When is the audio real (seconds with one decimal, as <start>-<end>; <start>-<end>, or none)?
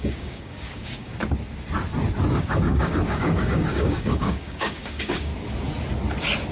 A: 1.1-2.4; 5.3-6.5